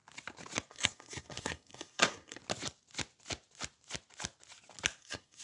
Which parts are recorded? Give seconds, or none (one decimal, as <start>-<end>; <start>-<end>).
0.0-0.7; 2.4-5.0